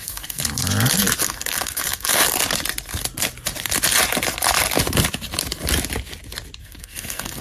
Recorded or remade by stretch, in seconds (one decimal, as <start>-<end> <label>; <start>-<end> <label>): 0.0-0.4 remade; 0.4-1.2 recorded; 1.2-2.2 remade; 2.2-6.6 recorded; 6.6-7.4 remade